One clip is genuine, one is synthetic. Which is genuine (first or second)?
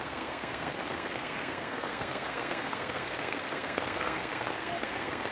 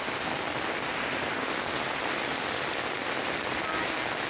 second